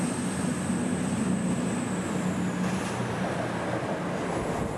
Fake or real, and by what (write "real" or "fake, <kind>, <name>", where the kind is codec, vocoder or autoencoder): real